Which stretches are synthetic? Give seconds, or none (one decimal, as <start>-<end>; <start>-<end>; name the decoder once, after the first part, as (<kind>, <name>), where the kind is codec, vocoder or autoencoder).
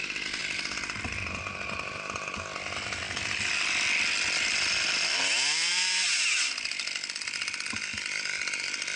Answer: none